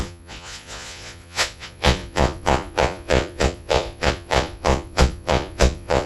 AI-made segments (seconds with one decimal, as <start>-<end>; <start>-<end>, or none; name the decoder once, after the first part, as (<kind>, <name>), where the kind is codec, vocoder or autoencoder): 0.0-6.1 (vocoder, Vocos)